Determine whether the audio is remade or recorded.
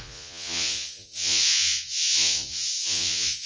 remade